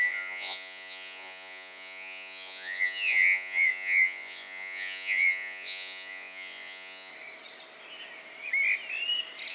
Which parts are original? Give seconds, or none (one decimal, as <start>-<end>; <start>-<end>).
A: 7.1-9.5